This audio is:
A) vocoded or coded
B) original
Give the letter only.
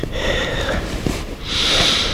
A